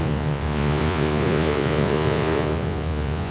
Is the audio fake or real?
fake